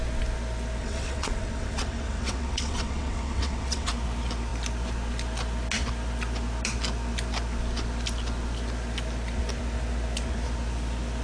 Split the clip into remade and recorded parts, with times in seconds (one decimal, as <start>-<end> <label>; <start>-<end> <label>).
0.0-0.8 recorded; 0.8-3.9 remade; 3.9-11.2 recorded